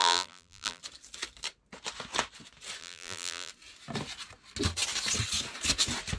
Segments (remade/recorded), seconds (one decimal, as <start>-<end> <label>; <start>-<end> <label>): 0.0-0.8 remade; 0.8-2.8 recorded; 2.8-3.5 remade; 3.5-6.2 recorded